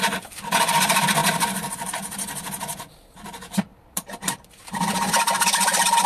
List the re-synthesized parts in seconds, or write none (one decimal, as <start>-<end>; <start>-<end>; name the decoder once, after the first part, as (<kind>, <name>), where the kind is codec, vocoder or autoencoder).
0.0-6.1 (vocoder, BigVGAN v2)